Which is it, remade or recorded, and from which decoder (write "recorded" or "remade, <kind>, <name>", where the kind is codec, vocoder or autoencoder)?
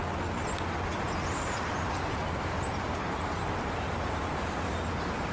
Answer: recorded